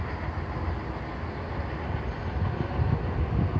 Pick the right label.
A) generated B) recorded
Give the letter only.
B